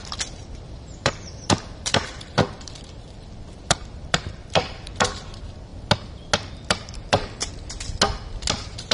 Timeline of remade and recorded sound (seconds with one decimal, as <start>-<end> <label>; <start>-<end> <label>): 0.0-5.7 remade; 5.7-6.5 recorded; 6.5-7.5 remade; 7.5-8.9 recorded